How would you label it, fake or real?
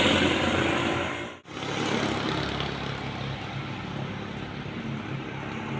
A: real